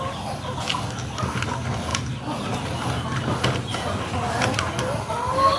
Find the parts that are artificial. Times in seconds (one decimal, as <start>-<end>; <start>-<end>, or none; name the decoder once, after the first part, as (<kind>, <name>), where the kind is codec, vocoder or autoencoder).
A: none